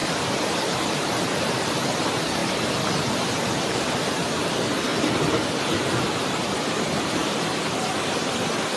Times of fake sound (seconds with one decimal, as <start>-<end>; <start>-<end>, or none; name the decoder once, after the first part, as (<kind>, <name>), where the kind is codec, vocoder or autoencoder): 0.0-1.7 (vocoder, BigVGAN v2); 2.4-4.5